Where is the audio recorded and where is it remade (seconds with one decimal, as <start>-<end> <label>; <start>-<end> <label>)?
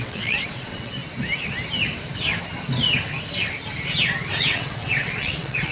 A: 0.0-1.0 remade; 1.0-4.4 recorded; 4.4-5.7 remade